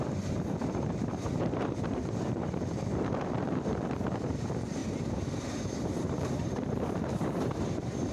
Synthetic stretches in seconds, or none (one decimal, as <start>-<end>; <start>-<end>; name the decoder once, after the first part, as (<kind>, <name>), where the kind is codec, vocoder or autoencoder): 0.0-4.8 (vocoder, BigVGAN v2); 5.5-8.1